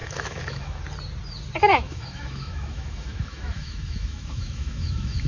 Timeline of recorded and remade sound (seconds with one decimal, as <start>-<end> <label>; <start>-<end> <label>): 0.0-0.8 remade; 0.8-1.7 recorded; 1.7-5.3 remade